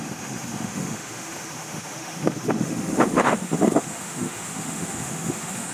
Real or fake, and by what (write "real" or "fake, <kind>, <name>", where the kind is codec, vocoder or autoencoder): fake, autoencoder, DAC-VAE